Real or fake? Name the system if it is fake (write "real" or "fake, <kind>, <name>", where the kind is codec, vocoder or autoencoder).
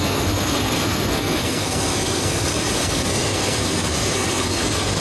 fake, codec, SNAC